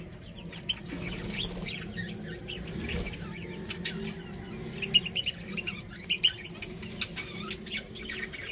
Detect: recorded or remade recorded